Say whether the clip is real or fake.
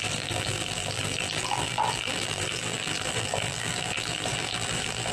fake